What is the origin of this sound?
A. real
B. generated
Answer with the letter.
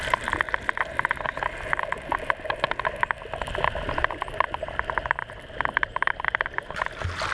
A